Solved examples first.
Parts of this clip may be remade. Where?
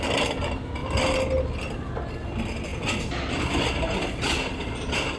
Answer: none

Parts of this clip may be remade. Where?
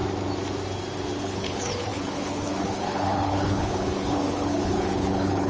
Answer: 1.2-5.5 (codec, HILCodec)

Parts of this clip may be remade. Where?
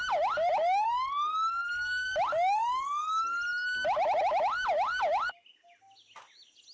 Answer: none